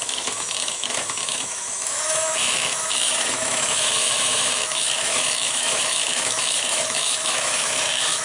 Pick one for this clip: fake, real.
fake